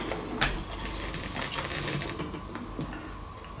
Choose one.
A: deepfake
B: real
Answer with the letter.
B